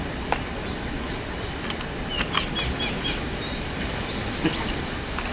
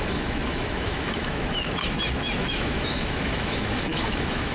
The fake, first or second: second